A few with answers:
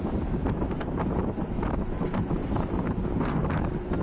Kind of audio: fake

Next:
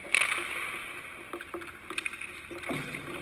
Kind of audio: real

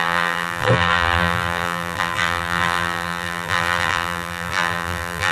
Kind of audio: fake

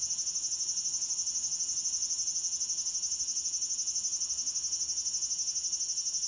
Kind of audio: real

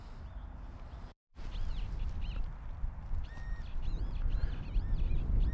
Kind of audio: fake